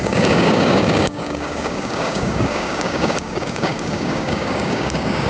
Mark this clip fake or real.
fake